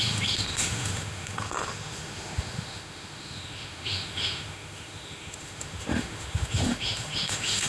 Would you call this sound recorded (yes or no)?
no